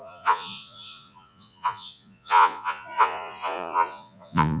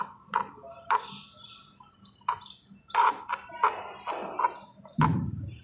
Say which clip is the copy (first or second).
first